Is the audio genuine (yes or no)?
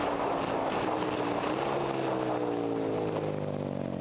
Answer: yes